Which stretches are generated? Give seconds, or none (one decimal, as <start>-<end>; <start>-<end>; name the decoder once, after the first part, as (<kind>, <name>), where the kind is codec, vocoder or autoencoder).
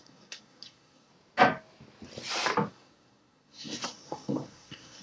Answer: 0.0-1.1 (codec, SNAC); 2.7-5.0